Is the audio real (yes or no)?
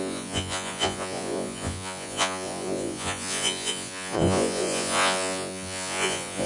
no